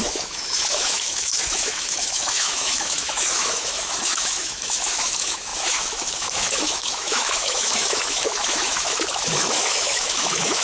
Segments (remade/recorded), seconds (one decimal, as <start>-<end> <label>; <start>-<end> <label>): 0.0-10.6 remade